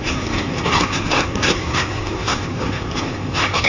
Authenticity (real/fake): fake